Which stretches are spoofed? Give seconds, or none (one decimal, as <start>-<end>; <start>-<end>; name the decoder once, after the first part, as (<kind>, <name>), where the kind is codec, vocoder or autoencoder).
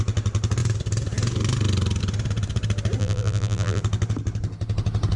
3.0-3.8 (vocoder, BigVGAN v2)